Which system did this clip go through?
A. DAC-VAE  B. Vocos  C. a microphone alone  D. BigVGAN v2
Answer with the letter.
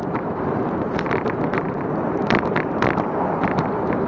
D